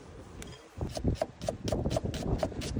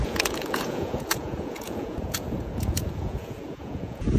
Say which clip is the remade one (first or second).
second